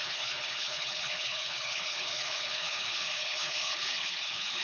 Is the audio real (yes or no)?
no